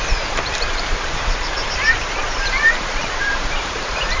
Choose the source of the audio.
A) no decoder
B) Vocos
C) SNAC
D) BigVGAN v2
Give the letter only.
D